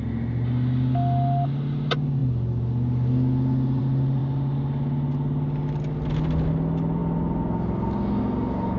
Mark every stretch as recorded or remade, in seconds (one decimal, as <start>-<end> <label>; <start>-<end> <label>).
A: 0.0-8.8 recorded